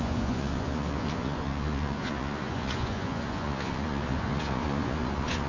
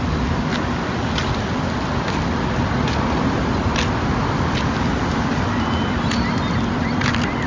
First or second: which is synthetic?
first